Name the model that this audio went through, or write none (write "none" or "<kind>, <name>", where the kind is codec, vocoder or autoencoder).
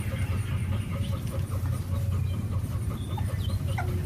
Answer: none